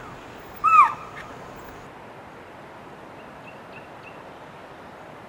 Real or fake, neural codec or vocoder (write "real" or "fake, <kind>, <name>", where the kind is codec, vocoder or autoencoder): real